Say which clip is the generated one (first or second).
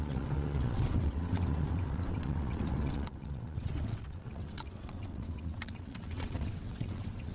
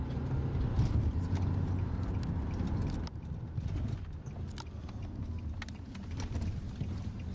first